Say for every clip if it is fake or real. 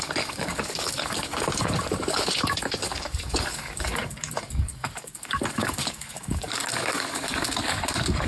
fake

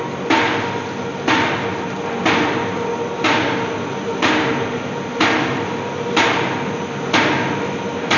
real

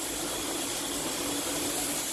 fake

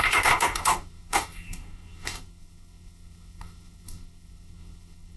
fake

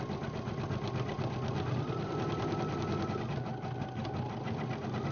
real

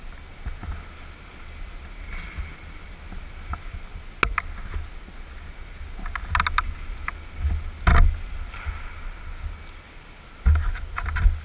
real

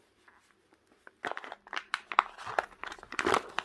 real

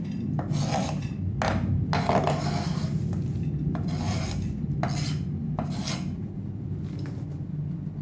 real